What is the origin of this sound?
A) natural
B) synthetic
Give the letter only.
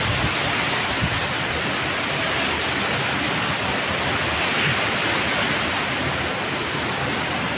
A